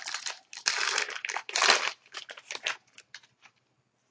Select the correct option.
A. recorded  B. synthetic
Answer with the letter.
A